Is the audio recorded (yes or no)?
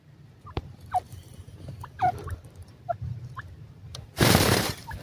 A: no